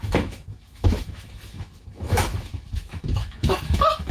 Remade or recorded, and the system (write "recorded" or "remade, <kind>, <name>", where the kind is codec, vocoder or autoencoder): remade, autoencoder, DAC-VAE